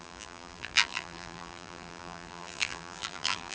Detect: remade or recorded remade